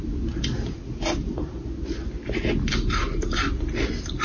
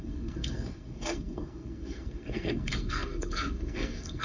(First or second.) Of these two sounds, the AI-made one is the second